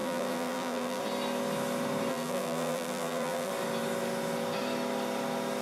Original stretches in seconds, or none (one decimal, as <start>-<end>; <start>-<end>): 1.0-2.1; 3.5-5.6